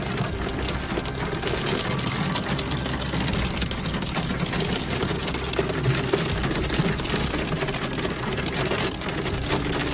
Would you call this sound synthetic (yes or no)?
no